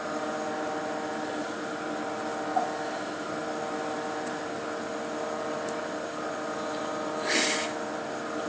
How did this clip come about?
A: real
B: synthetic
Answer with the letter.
A